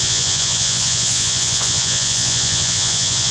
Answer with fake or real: fake